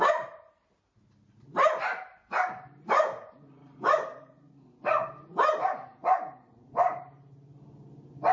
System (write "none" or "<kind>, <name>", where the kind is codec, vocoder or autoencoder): none